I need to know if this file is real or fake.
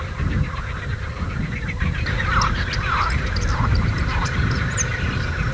real